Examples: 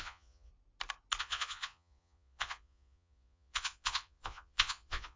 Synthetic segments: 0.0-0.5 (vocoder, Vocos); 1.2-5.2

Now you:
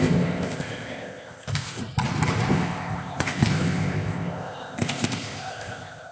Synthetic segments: 0.0-1.8 (codec, ZipCodec); 2.5-6.1

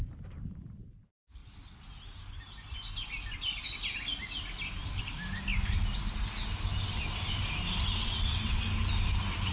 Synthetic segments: 8.0-8.6 (vocoder, WaveNeXt)

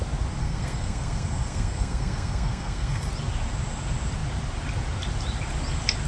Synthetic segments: 0.4-3.1 (codec, SNAC)

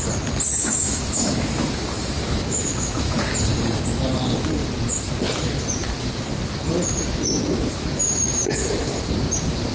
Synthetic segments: 0.6-3.2 (autoencoder, DAC-VAE)

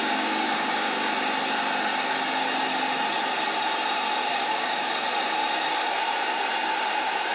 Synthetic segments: 0.0-1.1 (codec, DAC); 4.3-4.9

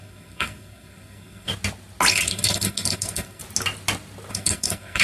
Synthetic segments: 0.0-1.5 (codec, SNAC); 2.1-3.4; 4.3-5.0

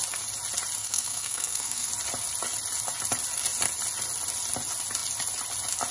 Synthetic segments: 0.8-1.9 (codec, SNAC)